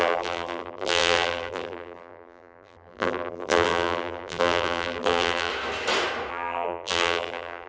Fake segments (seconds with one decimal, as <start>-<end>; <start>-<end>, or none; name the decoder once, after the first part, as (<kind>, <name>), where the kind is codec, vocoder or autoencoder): 0.0-5.5 (vocoder, BigVGAN v2); 6.3-7.7